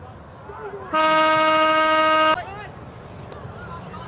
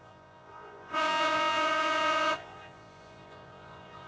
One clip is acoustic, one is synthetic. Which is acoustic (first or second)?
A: first